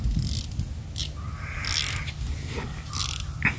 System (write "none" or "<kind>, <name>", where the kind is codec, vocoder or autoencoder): none